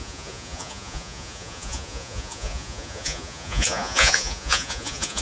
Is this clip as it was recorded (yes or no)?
no